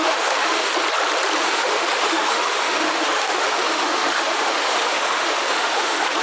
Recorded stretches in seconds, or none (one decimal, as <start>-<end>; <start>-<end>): 0.7-1.4